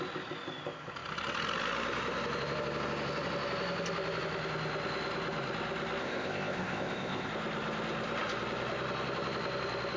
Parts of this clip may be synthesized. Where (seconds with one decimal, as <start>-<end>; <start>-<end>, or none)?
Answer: 6.0-7.3